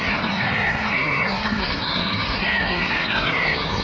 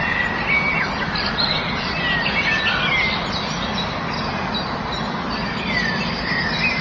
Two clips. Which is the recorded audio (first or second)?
second